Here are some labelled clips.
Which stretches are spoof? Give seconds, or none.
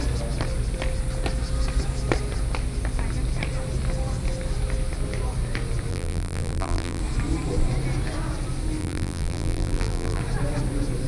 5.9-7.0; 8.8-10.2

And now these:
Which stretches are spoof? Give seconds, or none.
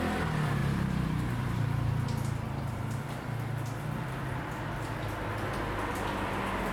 0.6-3.0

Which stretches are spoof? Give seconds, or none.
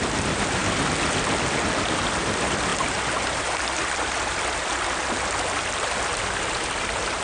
0.0-0.6; 1.8-2.7; 3.4-7.2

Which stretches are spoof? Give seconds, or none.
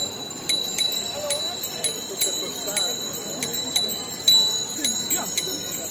none